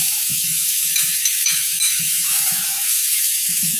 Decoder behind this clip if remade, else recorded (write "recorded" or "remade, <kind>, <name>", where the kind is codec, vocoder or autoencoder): remade, autoencoder, DAC-VAE